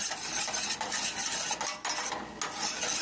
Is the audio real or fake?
real